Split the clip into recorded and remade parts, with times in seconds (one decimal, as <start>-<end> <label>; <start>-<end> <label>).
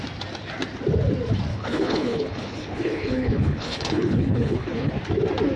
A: 0.0-1.5 recorded; 1.5-4.9 remade; 4.9-5.6 recorded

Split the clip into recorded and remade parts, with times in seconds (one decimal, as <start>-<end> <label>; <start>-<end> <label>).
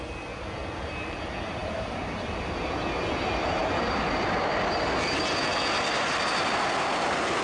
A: 0.0-1.6 recorded; 1.6-2.4 remade; 2.4-7.4 recorded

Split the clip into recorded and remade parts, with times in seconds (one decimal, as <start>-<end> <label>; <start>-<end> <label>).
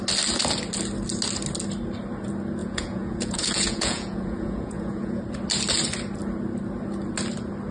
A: 0.0-2.6 recorded; 2.6-5.2 remade; 5.2-7.7 recorded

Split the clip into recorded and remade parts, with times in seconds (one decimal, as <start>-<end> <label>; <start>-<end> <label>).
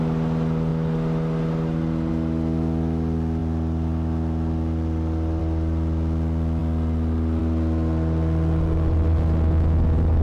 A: 0.0-10.2 recorded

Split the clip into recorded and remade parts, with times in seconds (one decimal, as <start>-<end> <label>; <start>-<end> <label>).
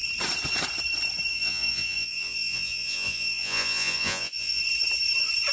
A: 0.0-1.3 recorded; 1.3-4.6 remade; 4.6-5.5 recorded